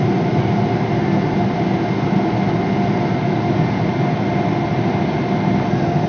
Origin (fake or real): real